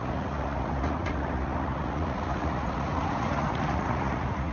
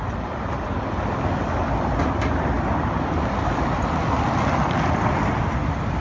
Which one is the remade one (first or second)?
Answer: first